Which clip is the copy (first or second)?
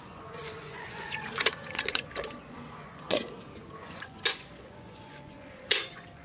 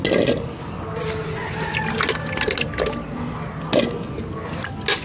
first